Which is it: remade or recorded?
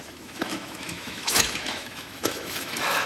remade